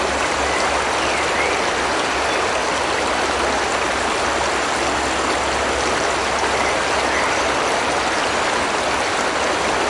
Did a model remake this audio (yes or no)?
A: no